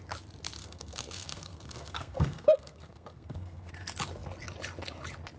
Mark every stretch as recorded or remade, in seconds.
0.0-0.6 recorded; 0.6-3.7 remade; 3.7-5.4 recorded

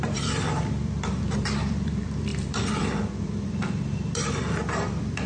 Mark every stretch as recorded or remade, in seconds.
0.0-5.3 remade

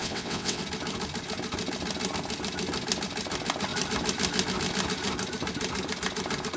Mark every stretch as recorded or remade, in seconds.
0.0-0.6 remade; 0.6-6.6 recorded